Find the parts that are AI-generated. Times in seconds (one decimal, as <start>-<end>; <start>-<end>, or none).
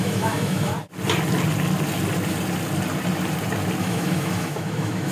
0.0-0.7; 3.8-5.1